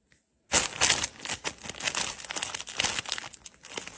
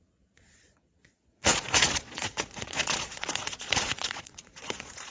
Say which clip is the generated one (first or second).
second